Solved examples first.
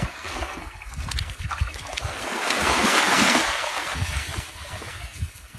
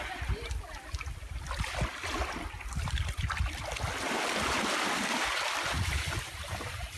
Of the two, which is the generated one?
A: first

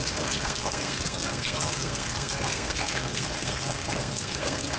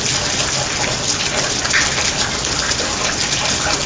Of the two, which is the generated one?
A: first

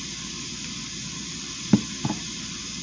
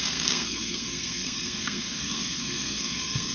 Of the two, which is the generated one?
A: second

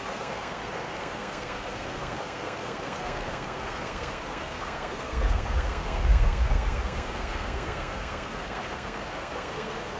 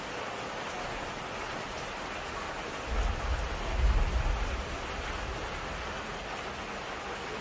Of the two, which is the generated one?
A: first